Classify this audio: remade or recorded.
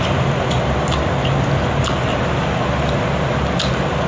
recorded